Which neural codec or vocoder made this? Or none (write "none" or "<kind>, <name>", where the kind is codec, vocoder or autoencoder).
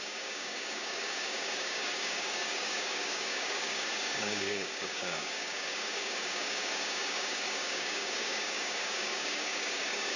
codec, DAC